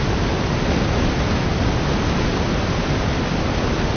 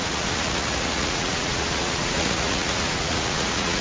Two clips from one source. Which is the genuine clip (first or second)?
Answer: first